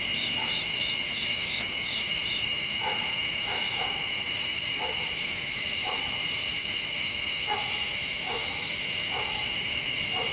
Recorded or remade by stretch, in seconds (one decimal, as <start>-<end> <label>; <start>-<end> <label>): 0.0-10.3 remade